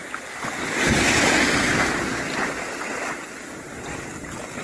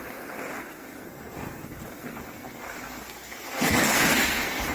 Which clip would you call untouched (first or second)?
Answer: first